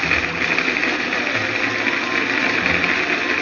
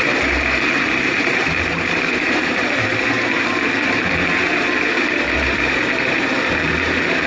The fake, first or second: second